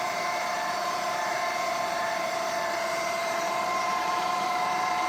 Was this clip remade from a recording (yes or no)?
yes